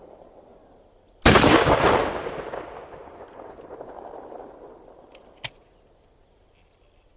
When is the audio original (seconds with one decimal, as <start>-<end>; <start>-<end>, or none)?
0.0-7.2